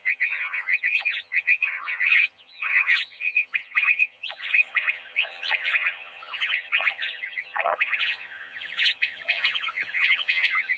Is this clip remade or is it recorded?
remade